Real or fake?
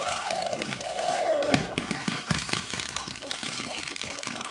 fake